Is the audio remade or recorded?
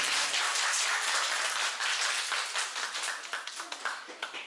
recorded